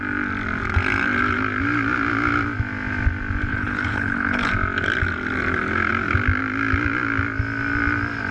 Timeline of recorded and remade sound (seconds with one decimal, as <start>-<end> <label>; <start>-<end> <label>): 0.0-3.5 recorded; 3.5-4.5 remade; 4.5-8.3 recorded